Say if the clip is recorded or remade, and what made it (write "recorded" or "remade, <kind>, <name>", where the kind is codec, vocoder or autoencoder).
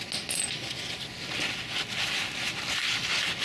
recorded